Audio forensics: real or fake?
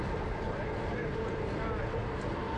real